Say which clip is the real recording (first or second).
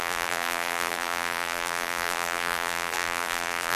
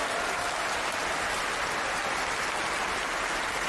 second